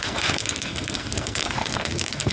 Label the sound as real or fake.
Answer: fake